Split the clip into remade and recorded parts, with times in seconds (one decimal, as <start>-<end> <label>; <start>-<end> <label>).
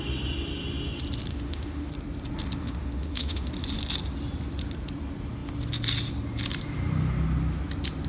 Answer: 0.0-1.3 recorded; 1.3-1.9 remade; 1.9-2.6 recorded; 2.6-3.5 remade; 3.5-8.1 recorded